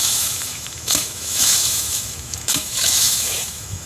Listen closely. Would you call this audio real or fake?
fake